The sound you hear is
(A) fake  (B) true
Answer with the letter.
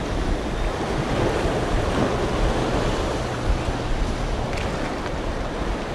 B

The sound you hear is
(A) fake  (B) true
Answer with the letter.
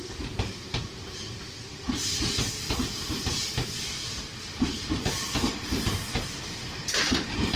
A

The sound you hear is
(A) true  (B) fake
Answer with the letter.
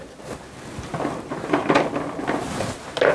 A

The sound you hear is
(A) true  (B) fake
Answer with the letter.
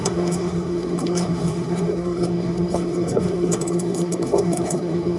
B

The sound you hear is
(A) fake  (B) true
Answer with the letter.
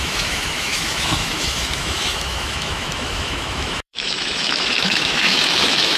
A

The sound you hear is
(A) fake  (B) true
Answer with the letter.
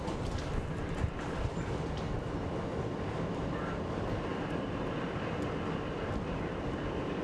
B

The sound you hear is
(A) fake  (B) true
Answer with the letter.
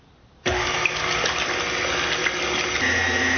B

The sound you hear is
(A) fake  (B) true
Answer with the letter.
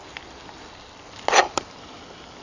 B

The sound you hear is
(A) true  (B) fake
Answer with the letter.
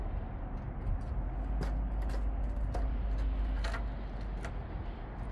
A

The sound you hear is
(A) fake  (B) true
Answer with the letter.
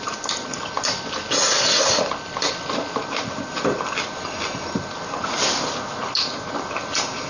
B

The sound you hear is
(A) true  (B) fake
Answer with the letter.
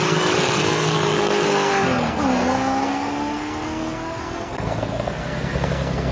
B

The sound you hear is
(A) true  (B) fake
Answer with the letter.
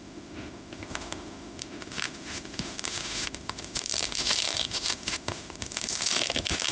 B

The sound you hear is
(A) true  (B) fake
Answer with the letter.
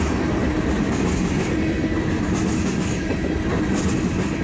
A